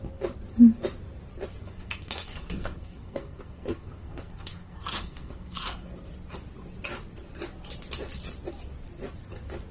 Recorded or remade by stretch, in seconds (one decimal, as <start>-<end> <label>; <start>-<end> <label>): 0.0-1.6 recorded; 1.6-5.9 remade; 5.9-9.7 recorded